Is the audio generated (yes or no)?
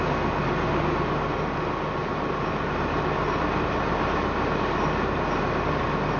no